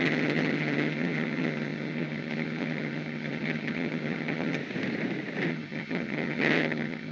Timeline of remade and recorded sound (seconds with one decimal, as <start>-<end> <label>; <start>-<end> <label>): 0.0-4.6 remade; 4.6-5.5 recorded; 5.5-7.1 remade